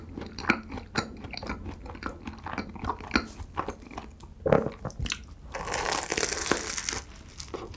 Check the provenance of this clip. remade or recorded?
recorded